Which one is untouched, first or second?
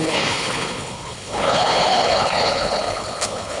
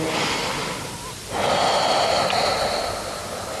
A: second